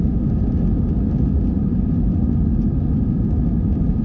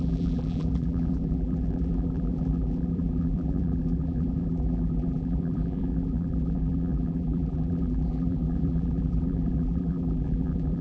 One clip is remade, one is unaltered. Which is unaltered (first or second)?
first